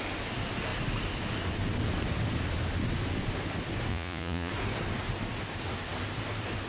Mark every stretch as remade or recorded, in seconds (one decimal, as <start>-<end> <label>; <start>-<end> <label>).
0.0-3.9 recorded; 3.9-4.5 remade; 4.5-6.7 recorded